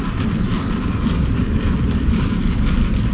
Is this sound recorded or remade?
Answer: recorded